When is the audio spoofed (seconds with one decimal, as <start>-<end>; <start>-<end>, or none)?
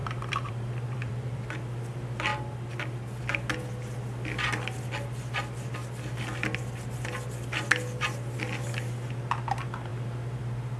0.0-1.4